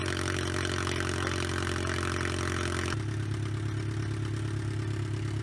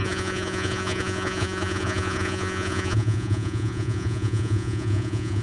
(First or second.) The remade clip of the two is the second